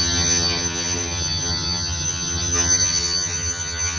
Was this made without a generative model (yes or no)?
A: no